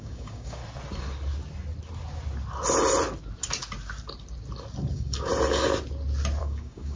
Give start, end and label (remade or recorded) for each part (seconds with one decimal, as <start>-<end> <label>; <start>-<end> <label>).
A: 0.0-0.6 remade; 0.6-4.8 recorded; 4.8-5.3 remade; 5.3-6.4 recorded; 6.4-7.0 remade